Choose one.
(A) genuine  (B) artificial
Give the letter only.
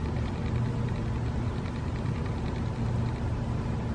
A